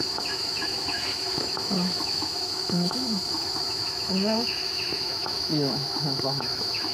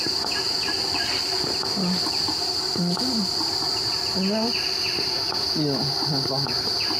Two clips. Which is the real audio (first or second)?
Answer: second